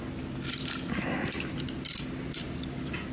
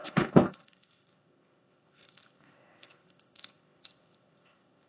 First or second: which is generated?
second